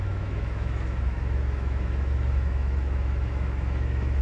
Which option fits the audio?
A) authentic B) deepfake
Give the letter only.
B